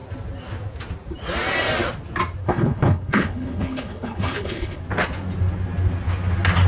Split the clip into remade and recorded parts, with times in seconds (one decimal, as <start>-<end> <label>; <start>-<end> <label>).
0.0-2.4 recorded; 2.4-4.8 remade; 4.8-6.7 recorded